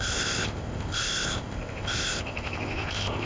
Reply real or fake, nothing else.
fake